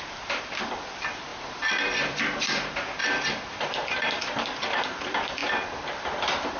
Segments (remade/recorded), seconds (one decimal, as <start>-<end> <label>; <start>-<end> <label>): 0.0-6.6 remade